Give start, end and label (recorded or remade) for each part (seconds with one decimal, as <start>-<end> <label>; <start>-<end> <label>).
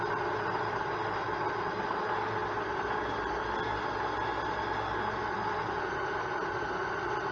0.0-7.3 recorded